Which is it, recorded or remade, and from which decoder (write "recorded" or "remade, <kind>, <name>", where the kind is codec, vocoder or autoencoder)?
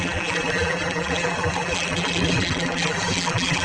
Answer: remade, vocoder, BigVGAN v2